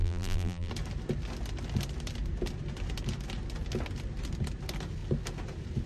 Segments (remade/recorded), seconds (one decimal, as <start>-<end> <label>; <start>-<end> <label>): 0.0-0.7 remade; 0.7-5.9 recorded